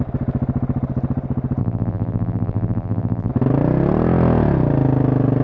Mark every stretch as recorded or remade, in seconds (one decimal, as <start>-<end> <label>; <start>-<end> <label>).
0.0-1.6 recorded; 1.6-3.3 remade; 3.3-5.4 recorded